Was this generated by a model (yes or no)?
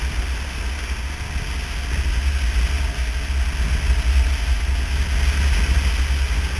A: no